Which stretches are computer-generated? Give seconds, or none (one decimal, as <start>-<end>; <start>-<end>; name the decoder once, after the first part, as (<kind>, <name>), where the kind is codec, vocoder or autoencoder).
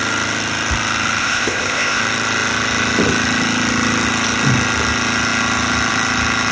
1.2-2.0 (codec, ZipCodec)